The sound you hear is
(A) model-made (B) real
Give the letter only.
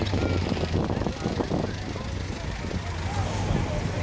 B